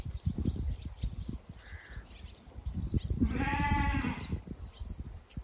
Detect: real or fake fake